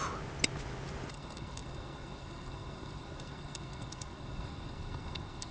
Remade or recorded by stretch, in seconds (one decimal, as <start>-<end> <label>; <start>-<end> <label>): 0.0-1.1 recorded; 1.1-5.5 remade